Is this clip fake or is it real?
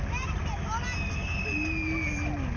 real